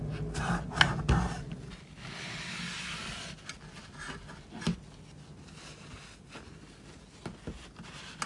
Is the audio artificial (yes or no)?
no